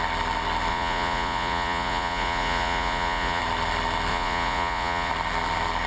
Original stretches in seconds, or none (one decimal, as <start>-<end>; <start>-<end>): 0.0-0.7; 3.4-4.1; 5.1-5.9